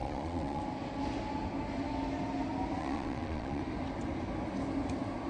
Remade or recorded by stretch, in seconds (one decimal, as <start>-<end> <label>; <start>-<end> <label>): 0.0-0.6 remade; 0.6-2.8 recorded; 2.8-3.6 remade; 3.6-5.3 recorded